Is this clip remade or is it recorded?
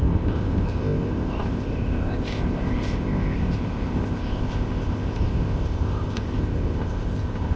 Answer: remade